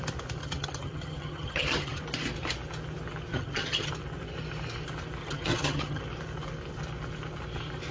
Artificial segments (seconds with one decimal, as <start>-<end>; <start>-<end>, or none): 0.4-2.0; 3.3-3.9; 5.2-6.0